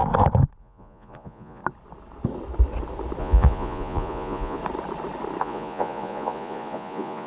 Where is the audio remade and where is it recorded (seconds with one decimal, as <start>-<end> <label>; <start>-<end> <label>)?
0.0-0.6 recorded; 0.6-1.6 remade; 1.6-3.2 recorded; 3.2-4.6 remade; 4.6-5.4 recorded; 5.4-7.3 remade